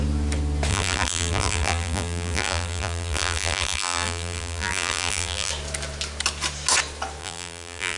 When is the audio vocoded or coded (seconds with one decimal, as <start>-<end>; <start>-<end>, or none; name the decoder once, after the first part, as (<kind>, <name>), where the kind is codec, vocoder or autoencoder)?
0.7-5.5 (vocoder, BigVGAN v2); 7.2-8.0